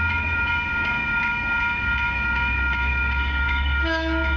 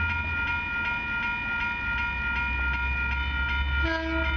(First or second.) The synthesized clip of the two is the first